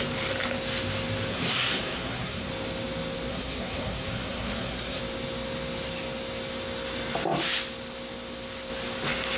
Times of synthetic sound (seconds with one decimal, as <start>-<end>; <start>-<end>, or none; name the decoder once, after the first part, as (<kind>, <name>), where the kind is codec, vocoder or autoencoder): 1.3-2.5 (codec, SNAC); 3.3-5.0

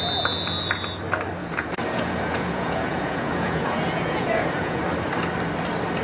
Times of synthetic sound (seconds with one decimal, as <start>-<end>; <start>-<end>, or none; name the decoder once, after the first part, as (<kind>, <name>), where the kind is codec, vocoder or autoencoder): 1.4-4.8 (vocoder, Vocos)

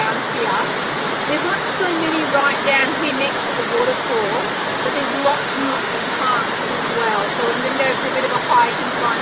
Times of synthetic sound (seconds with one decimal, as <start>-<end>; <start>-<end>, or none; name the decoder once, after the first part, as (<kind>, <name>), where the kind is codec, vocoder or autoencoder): 5.1-6.2 (autoencoder, DAC-VAE)

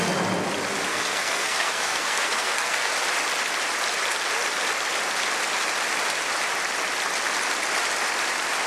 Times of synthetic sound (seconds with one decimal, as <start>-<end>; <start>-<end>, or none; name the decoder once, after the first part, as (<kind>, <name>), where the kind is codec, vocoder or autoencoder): 0.9-2.9 (codec, SNAC)

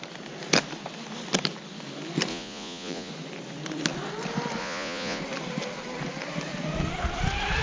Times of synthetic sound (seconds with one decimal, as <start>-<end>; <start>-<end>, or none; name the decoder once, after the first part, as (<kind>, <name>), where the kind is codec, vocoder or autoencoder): 2.3-3.1 (vocoder, Vocos); 4.6-5.2

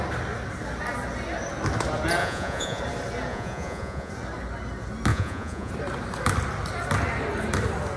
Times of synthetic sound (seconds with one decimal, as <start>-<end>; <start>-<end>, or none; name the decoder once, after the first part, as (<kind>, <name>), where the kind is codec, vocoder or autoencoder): 2.2-2.8 (vocoder, Vocos); 3.3-4.1; 5.1-5.7

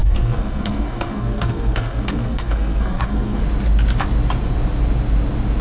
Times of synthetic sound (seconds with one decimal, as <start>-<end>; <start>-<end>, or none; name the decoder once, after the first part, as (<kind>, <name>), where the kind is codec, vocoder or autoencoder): 0.0-3.4 (codec, SNAC)

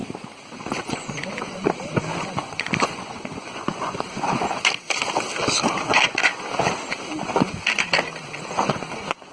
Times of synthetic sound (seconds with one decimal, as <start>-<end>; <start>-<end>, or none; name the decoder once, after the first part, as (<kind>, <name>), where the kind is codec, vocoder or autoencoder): 0.8-1.6 (vocoder, Vocos); 2.2-4.1; 5.7-6.3; 8.7-9.3